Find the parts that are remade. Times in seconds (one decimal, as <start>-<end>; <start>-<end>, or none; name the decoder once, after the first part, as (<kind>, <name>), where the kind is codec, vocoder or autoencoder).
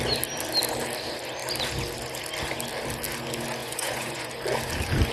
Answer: 3.6-4.3 (vocoder, Vocos)